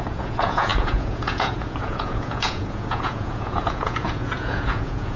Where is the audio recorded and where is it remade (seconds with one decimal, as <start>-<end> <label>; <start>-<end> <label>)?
0.0-5.2 remade